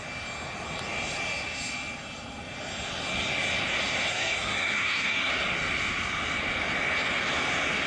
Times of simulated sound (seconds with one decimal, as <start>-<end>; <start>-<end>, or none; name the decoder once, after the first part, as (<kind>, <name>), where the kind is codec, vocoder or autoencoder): 4.1-5.3 (codec, SNAC)